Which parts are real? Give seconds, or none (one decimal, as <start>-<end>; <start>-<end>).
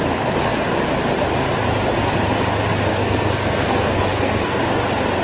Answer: 0.0-2.9; 4.6-5.2